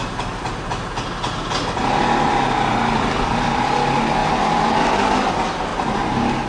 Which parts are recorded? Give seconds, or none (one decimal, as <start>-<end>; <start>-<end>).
0.0-6.5